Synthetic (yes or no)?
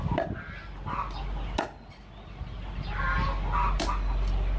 no